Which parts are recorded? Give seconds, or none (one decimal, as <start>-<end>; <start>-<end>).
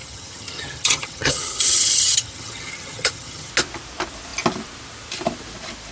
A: 3.5-5.9